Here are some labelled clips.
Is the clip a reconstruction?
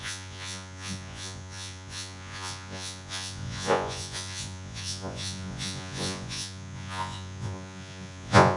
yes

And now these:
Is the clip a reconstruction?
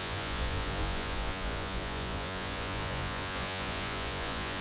yes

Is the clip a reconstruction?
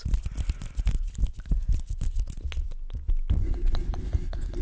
no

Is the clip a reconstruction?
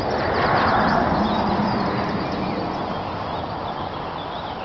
no